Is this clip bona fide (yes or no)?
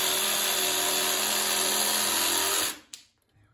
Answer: yes